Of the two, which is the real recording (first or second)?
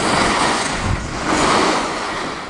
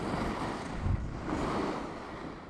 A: second